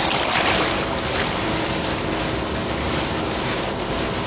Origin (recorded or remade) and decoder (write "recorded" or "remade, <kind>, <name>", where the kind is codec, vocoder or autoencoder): recorded